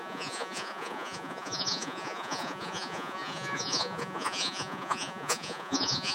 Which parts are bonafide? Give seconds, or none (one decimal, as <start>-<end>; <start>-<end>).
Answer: none